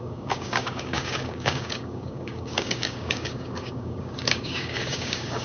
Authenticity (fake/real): fake